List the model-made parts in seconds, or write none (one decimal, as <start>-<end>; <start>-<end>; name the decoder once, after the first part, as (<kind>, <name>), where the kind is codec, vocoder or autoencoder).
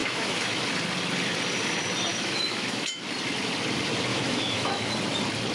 0.0-0.6 (autoencoder, DAC-VAE); 2.1-3.0; 4.1-4.9